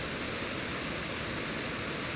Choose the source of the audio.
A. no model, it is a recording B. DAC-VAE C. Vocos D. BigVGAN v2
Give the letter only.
A